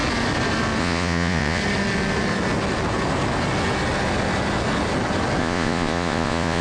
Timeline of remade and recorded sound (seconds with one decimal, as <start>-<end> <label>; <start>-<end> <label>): 0.0-0.8 recorded; 0.8-1.6 remade; 1.6-5.4 recorded; 5.4-6.6 remade